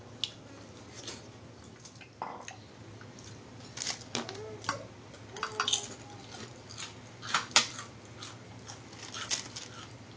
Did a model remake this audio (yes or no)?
no